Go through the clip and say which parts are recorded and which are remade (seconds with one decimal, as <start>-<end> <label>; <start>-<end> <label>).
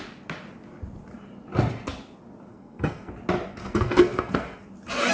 0.0-2.5 recorded; 2.5-3.1 remade; 3.1-3.6 recorded; 3.6-4.6 remade; 4.6-5.1 recorded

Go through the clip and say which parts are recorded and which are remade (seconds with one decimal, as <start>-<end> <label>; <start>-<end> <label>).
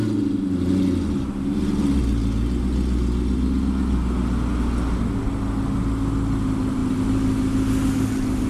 0.0-8.5 recorded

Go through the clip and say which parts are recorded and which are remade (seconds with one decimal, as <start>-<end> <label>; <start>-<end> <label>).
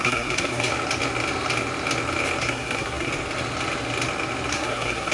0.0-0.7 remade; 0.7-2.4 recorded; 2.4-3.1 remade; 3.1-4.5 recorded; 4.5-5.1 remade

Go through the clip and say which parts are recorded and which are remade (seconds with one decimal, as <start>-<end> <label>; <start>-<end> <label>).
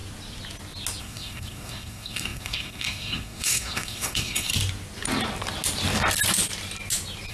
0.0-1.0 recorded; 1.0-4.5 remade; 4.5-7.3 recorded